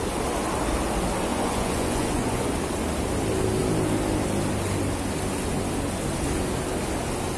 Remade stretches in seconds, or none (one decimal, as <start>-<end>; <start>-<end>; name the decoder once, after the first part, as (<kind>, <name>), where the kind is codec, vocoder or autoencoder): 1.3-2.5 (vocoder, Vocos)